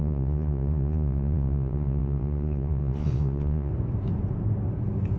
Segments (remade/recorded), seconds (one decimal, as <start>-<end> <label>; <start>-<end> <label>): 0.0-3.7 remade; 3.7-5.2 recorded